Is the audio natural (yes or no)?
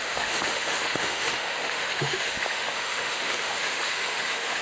no